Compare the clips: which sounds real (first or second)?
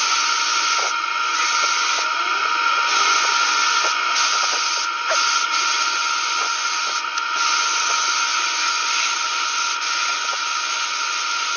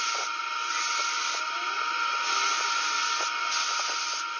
second